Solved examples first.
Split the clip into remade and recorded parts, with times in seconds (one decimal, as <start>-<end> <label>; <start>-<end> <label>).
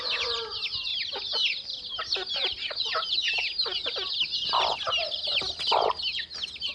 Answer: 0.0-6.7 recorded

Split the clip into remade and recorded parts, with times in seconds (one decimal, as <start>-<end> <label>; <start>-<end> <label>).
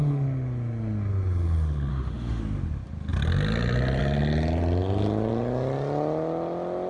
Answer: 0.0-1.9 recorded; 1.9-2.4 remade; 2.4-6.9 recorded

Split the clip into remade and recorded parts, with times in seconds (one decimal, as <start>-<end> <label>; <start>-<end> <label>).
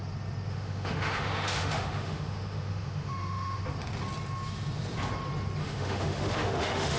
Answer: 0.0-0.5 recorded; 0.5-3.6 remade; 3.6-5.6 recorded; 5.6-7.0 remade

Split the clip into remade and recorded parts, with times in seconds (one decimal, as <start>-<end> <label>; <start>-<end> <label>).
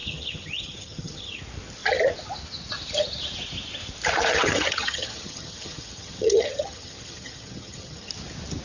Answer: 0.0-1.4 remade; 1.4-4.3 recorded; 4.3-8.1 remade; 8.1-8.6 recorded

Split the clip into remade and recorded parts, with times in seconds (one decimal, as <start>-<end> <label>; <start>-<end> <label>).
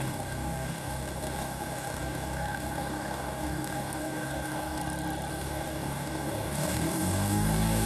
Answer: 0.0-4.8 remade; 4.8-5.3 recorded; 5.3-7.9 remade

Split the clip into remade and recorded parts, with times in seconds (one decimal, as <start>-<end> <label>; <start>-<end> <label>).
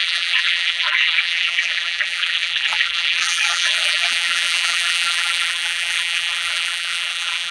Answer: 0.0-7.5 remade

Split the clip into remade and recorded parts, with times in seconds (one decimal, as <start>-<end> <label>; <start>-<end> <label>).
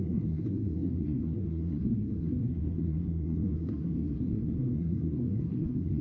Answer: 0.0-6.0 remade